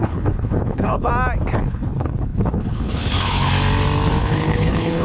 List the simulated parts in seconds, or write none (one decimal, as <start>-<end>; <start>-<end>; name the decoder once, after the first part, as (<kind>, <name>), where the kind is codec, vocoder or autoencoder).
0.0-1.1 (codec, HILCodec); 1.6-3.5; 4.2-5.0